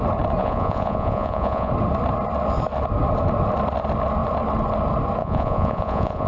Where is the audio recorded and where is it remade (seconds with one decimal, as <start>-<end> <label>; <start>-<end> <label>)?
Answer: 0.0-0.4 recorded; 0.4-1.7 remade; 1.7-5.2 recorded; 5.2-6.3 remade